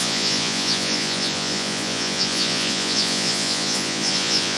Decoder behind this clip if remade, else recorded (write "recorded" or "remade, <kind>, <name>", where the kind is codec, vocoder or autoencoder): remade, vocoder, Vocos